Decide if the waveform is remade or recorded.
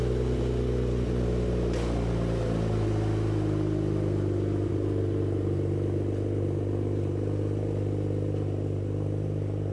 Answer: recorded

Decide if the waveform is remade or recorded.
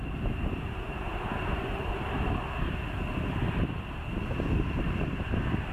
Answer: recorded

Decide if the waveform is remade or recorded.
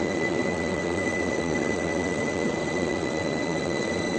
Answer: remade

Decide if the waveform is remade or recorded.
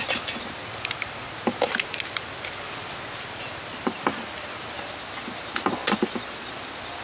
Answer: recorded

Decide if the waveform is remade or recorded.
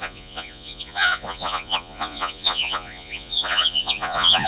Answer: remade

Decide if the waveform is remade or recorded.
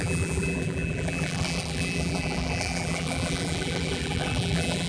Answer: remade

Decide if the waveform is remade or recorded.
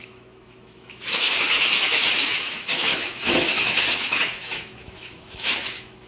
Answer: remade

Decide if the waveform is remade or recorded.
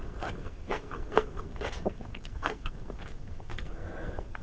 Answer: remade